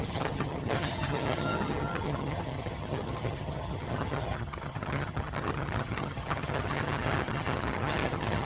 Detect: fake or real fake